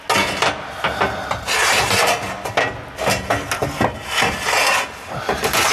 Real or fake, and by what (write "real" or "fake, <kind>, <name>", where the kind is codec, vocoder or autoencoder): real